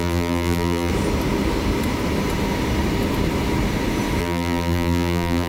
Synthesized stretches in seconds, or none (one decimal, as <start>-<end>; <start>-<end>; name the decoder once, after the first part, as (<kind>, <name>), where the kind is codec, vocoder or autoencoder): 0.0-0.9 (vocoder, BigVGAN v2); 4.2-5.5